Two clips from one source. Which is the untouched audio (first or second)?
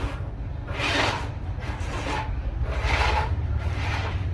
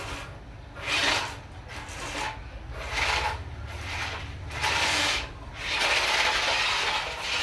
second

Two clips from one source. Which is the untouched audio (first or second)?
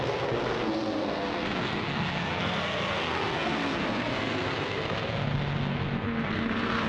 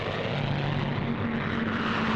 second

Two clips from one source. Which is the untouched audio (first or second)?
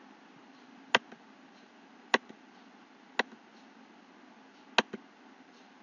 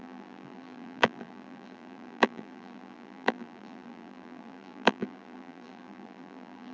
first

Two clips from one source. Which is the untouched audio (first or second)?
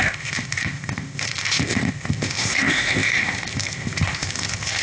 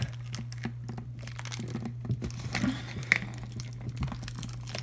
second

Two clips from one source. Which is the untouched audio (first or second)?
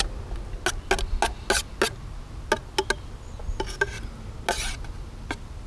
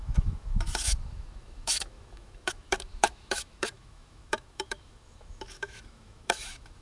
first